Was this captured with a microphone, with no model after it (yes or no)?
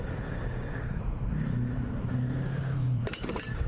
no